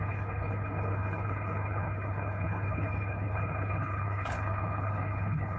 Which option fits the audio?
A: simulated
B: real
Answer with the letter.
A